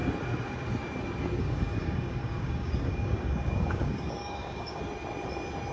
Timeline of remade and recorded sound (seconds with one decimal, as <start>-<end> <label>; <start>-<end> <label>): 0.0-1.4 recorded; 1.4-4.8 remade; 4.8-5.7 recorded